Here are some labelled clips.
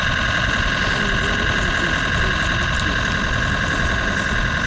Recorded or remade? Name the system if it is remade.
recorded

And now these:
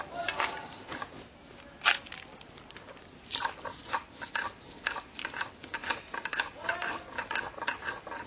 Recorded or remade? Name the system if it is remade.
recorded